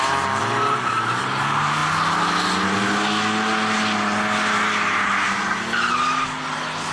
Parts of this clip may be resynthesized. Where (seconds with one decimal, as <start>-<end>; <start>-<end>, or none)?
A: 0.4-1.2